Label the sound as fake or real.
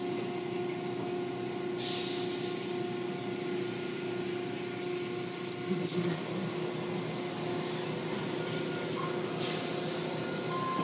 real